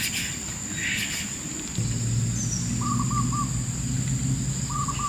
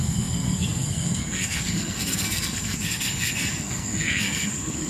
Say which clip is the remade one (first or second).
second